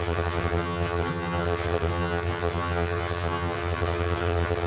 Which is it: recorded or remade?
remade